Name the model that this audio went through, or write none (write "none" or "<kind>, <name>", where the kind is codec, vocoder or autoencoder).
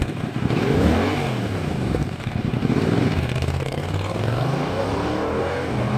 codec, DAC